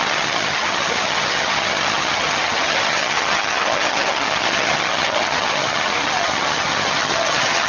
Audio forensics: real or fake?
fake